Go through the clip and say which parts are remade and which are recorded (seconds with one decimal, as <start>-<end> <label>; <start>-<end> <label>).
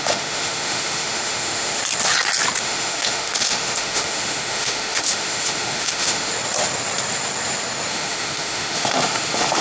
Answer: 0.0-1.8 remade; 1.8-2.6 recorded; 2.6-6.3 remade; 6.3-7.9 recorded; 7.9-9.6 remade